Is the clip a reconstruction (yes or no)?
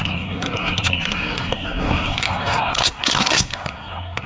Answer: yes